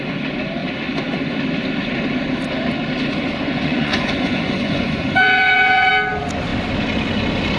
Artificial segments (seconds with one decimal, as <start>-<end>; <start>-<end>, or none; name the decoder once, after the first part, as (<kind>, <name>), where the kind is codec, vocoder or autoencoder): 3.5-5.9 (vocoder, Vocos)